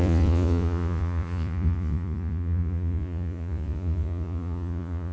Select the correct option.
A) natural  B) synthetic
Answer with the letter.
B